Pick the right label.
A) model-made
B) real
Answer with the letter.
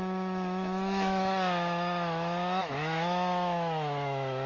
A